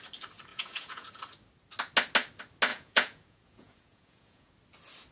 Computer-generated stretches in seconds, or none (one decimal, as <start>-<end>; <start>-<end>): 0.5-1.1; 2.7-4.5